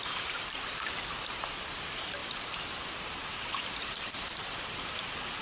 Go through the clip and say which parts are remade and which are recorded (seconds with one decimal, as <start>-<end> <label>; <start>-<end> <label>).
0.0-1.6 remade; 1.6-2.2 recorded; 2.2-4.6 remade; 4.6-5.4 recorded